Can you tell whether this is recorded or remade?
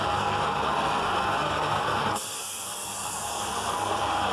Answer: remade